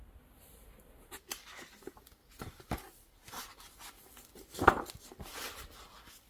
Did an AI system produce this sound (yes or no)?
no